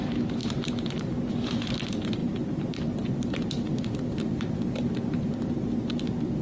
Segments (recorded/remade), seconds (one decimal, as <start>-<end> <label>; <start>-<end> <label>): 0.0-2.2 recorded; 2.2-5.5 remade; 5.5-6.4 recorded